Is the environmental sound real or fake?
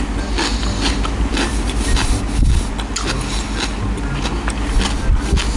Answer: real